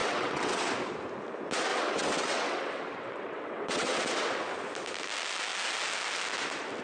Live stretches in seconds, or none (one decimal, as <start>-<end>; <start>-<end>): 0.6-1.7; 4.0-6.8